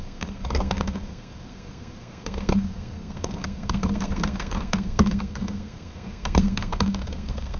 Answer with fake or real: fake